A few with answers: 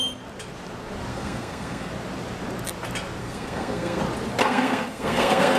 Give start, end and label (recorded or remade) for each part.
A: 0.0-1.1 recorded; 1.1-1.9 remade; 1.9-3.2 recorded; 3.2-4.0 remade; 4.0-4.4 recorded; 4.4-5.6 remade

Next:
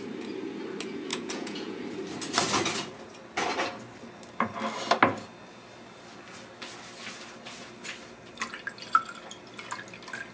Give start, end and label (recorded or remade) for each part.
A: 0.0-1.1 recorded; 1.1-1.8 remade; 1.8-10.3 recorded

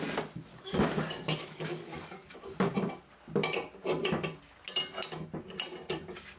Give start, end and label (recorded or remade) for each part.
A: 0.0-0.5 recorded; 0.5-2.7 remade; 2.7-6.4 recorded

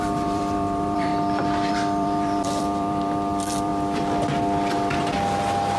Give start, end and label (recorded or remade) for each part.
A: 0.0-1.1 remade; 1.1-1.7 recorded; 1.7-3.7 remade; 3.7-5.8 recorded

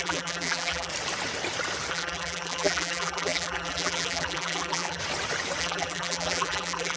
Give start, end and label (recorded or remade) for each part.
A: 0.0-0.9 remade; 0.9-1.9 recorded; 1.9-5.0 remade; 5.0-5.6 recorded; 5.6-7.0 remade